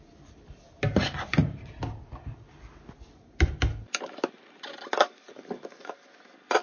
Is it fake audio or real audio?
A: real